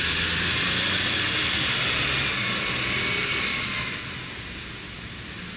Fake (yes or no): no